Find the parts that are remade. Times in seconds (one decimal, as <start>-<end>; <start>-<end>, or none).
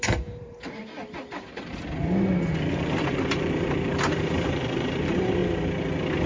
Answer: 0.0-0.8; 2.7-5.4